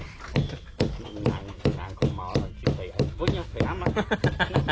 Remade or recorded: recorded